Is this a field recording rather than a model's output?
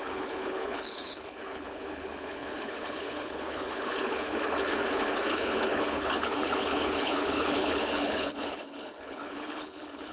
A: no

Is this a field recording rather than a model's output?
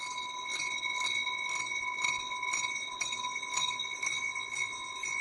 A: yes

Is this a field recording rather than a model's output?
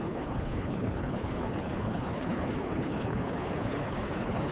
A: no